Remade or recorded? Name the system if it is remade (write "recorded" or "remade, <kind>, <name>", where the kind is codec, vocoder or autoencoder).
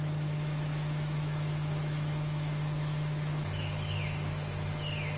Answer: remade, autoencoder, DAC-VAE